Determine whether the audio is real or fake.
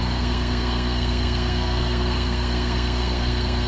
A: fake